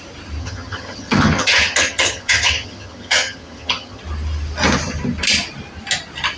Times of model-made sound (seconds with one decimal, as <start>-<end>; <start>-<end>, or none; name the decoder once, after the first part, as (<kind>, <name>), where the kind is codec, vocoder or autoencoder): 0.4-4.0 (vocoder, HiFi-GAN)